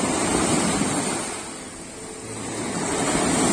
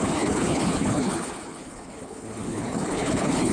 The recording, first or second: first